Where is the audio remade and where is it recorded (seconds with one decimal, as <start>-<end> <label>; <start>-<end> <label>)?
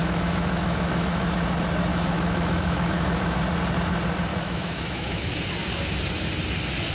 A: 0.0-1.3 remade; 1.3-1.9 recorded; 1.9-3.4 remade; 3.4-4.3 recorded; 4.3-5.4 remade; 5.4-6.9 recorded